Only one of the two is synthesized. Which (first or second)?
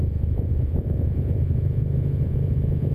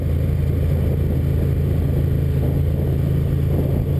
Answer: first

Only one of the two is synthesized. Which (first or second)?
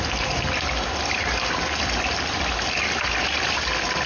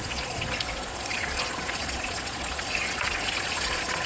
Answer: second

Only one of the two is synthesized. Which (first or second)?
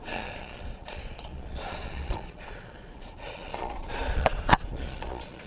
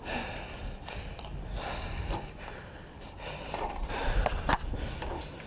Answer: first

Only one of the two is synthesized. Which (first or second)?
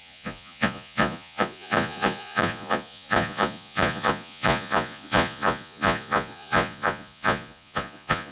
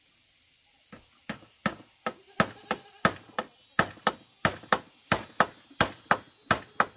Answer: first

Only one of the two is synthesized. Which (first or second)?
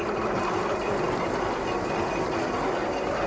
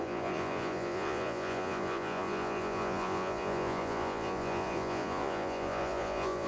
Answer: second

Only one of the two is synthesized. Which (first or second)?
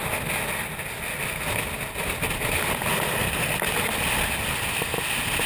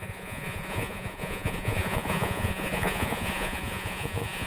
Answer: second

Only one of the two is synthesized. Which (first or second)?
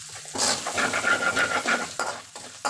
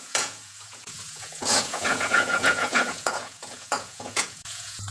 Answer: second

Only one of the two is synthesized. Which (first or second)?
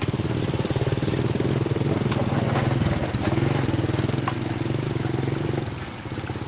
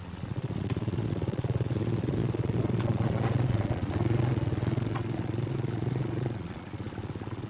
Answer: second